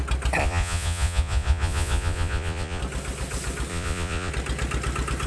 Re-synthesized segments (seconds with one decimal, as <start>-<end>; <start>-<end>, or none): 0.4-2.8; 3.7-4.3